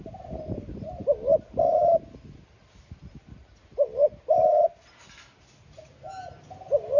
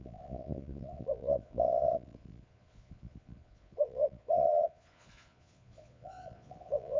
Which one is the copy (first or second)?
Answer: second